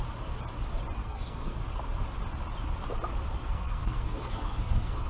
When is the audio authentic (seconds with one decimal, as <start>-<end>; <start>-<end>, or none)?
0.0-1.0; 1.6-3.4